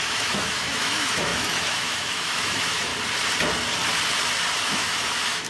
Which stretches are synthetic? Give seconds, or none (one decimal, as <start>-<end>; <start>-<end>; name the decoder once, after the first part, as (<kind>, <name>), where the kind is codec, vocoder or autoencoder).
0.0-2.9 (autoencoder, DAC-VAE); 4.6-5.5